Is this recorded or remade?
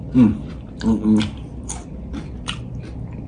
remade